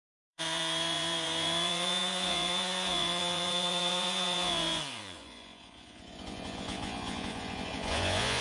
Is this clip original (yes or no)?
no